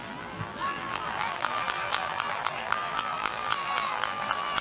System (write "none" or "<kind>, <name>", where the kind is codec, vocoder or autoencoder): vocoder, BigVGAN v2